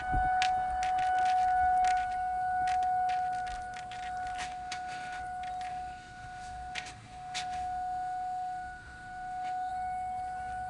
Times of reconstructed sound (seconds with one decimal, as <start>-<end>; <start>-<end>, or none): 4.4-5.2; 5.7-9.7